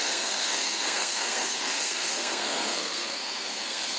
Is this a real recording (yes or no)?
no